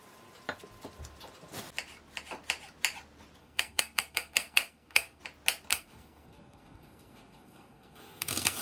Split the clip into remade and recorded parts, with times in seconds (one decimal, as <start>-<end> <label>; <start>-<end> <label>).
0.0-3.4 recorded; 3.4-5.2 remade; 5.2-5.7 recorded; 5.7-8.6 remade